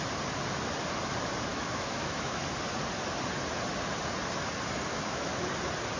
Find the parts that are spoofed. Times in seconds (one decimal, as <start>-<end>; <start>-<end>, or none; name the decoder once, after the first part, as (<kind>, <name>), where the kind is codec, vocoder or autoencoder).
1.5-2.4 (autoencoder, DAC-VAE); 4.9-5.5